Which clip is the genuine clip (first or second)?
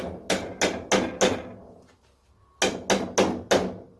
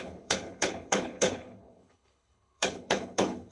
first